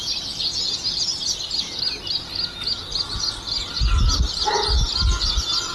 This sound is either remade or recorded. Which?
recorded